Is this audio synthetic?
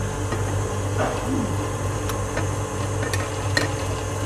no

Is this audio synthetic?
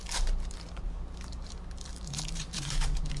yes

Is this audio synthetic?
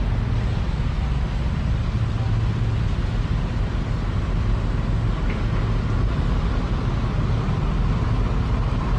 no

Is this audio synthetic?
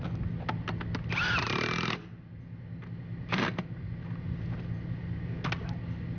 no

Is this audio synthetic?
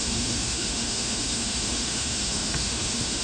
yes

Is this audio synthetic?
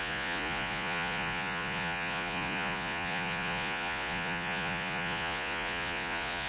yes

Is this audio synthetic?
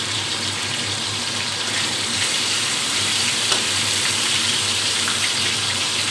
yes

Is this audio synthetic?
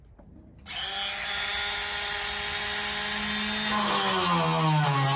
no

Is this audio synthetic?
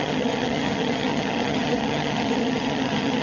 yes